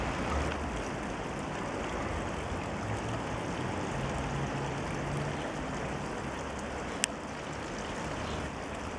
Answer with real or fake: real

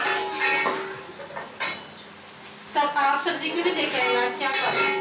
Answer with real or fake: real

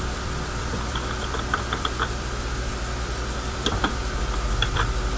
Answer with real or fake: fake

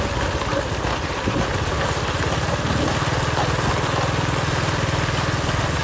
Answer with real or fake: real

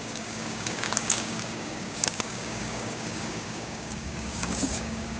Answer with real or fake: fake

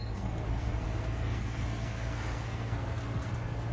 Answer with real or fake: fake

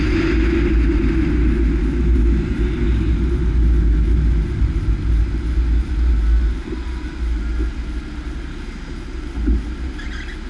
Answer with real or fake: real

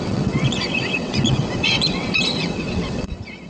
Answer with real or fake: fake